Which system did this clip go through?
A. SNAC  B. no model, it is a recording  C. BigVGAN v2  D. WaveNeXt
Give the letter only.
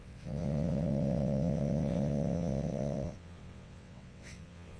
D